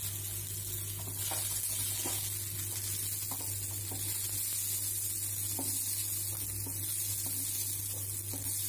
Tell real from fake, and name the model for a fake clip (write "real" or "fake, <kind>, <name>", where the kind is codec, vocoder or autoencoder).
real